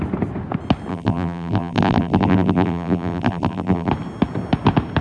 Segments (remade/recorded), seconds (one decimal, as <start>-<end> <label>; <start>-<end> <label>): 0.0-0.9 recorded; 0.9-3.9 remade; 3.9-5.0 recorded